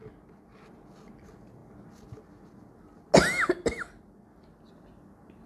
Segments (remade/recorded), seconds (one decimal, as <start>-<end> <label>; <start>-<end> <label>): 0.0-5.5 recorded